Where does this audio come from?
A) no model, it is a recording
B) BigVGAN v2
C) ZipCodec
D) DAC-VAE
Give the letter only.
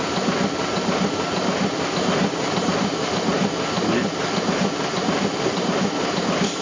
A